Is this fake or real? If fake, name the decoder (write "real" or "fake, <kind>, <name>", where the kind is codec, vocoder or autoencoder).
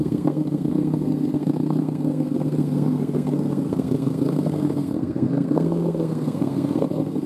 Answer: fake, codec, SNAC